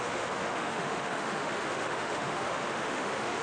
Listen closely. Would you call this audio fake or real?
fake